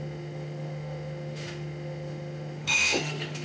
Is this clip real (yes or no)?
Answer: no